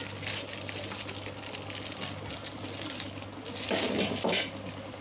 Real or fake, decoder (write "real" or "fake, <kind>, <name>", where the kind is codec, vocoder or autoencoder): real